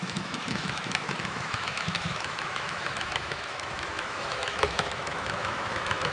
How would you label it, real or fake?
fake